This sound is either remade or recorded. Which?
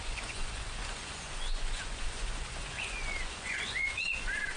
remade